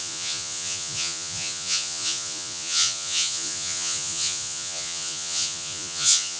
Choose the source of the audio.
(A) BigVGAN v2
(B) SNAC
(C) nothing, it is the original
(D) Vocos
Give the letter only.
D